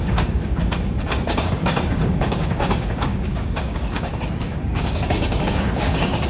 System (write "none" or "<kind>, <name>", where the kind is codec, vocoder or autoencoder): codec, DAC